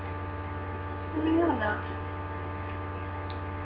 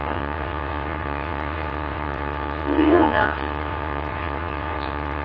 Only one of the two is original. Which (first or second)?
first